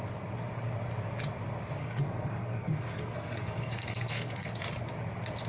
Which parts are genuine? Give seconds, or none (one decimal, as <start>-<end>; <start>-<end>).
0.0-1.8; 4.6-5.5